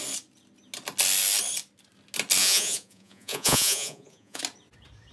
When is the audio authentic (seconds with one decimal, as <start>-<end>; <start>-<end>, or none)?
0.0-2.4; 4.4-5.1